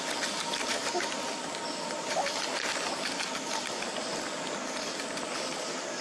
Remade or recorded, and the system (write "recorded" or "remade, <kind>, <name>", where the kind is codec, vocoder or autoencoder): recorded